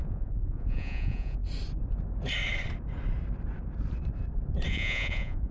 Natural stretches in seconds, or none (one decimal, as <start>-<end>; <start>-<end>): 1.4-4.7